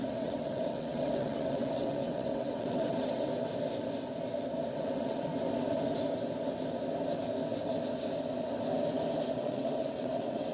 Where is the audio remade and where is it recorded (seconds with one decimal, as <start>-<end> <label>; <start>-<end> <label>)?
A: 0.0-3.3 remade; 3.3-4.7 recorded; 4.7-5.3 remade; 5.3-9.4 recorded; 9.4-10.5 remade